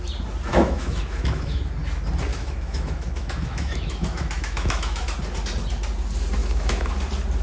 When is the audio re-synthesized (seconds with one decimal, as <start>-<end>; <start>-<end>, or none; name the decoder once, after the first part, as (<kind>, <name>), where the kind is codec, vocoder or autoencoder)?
0.5-1.6 (autoencoder, DAC-VAE); 2.3-5.1; 6.4-6.9